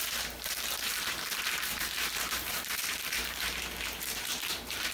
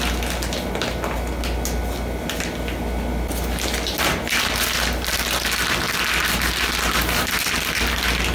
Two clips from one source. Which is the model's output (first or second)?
first